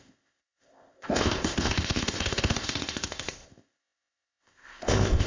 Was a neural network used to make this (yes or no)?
yes